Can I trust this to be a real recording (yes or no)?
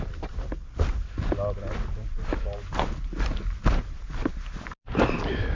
yes